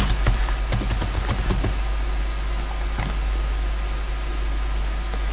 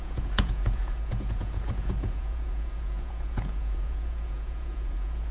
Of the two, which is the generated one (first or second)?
second